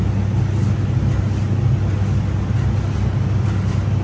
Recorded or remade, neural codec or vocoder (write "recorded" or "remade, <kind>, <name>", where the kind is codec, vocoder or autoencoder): recorded